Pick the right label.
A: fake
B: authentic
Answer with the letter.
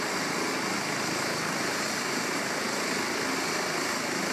B